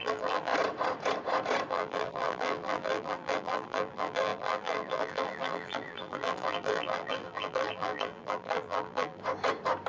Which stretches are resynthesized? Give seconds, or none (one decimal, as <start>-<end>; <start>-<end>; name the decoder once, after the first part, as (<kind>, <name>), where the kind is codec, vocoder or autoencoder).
0.0-0.5 (vocoder, BigVGAN v2); 1.7-9.2